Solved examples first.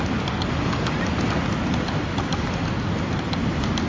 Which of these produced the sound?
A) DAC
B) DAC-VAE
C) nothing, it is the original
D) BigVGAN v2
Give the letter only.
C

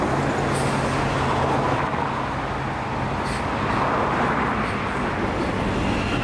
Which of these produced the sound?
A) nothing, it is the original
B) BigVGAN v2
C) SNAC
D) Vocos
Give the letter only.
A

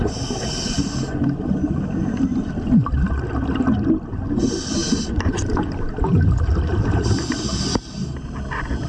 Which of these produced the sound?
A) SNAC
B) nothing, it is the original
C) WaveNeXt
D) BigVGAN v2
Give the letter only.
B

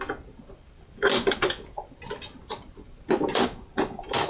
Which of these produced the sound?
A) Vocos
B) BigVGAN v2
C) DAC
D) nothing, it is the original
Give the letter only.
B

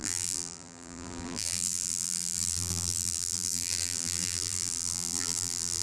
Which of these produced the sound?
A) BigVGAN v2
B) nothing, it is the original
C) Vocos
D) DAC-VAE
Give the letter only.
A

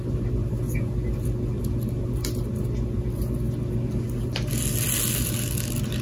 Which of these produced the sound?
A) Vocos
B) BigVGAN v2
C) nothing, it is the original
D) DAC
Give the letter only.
C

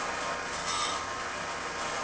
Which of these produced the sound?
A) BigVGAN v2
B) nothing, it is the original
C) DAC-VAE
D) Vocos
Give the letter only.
B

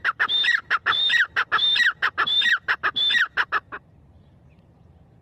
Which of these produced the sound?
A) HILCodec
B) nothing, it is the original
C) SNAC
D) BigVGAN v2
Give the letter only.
D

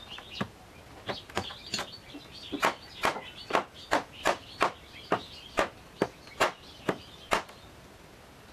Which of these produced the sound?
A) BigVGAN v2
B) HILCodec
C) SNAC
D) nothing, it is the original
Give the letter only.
D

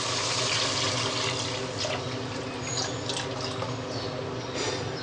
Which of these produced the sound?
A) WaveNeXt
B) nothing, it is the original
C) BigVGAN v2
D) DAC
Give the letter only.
B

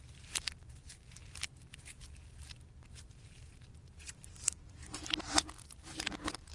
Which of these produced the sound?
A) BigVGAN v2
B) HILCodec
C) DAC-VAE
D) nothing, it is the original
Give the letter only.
A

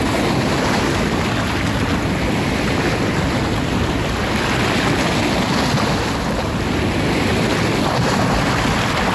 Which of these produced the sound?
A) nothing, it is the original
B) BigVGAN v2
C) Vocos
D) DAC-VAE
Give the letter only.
A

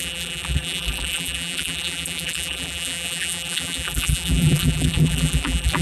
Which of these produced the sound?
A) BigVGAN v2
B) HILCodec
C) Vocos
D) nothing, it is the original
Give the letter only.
A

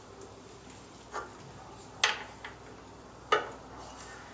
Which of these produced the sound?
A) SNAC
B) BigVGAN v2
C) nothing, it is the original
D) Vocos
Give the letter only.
C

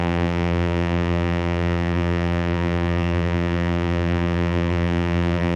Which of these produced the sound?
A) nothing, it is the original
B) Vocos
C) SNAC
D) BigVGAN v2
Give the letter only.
D